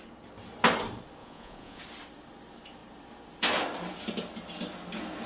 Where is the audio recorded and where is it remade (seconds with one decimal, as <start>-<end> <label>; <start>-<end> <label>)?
0.0-1.2 recorded; 1.2-1.8 remade; 1.8-5.3 recorded